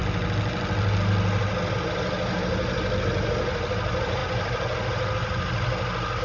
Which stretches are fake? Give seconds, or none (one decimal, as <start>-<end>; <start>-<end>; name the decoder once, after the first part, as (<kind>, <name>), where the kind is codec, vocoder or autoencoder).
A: none